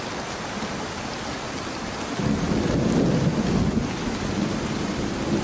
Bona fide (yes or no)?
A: yes